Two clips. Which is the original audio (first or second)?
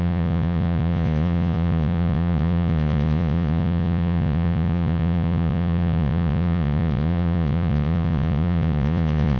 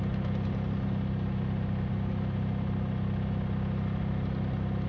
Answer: second